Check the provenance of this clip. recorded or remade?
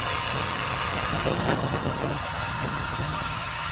remade